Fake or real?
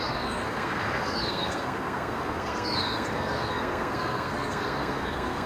fake